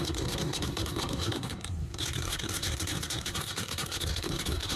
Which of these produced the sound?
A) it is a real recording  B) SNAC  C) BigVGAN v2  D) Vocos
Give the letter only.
B